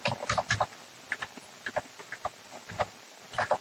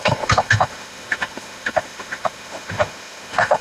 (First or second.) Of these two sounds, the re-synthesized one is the second